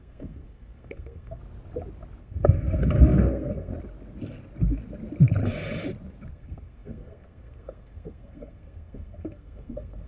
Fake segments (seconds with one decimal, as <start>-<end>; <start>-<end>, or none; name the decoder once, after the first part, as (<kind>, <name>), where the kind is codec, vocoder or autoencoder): 0.0-1.4 (codec, SNAC); 2.2-3.7; 6.3-10.1